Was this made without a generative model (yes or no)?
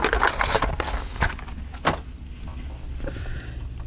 yes